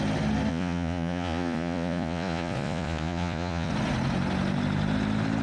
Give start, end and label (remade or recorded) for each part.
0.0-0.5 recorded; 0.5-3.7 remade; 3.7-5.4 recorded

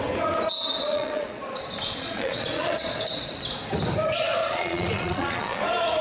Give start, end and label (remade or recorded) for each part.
0.0-0.8 recorded; 0.8-3.3 remade; 3.3-4.4 recorded; 4.4-5.6 remade; 5.6-6.0 recorded

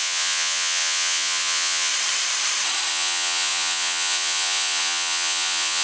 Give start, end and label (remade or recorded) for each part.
0.0-1.9 remade; 1.9-2.9 recorded; 2.9-5.8 remade